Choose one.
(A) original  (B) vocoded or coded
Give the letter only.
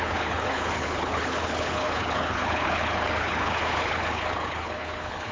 B